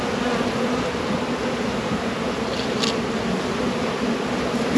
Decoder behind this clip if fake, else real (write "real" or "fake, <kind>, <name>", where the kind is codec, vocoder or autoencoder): real